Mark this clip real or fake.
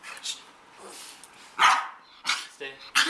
real